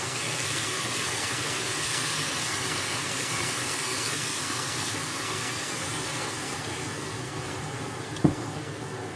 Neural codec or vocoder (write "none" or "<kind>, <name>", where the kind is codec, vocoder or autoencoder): codec, SNAC